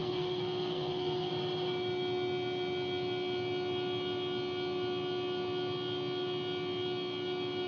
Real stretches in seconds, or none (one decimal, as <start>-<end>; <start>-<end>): 1.3-7.7